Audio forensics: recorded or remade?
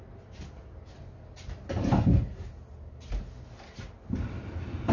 recorded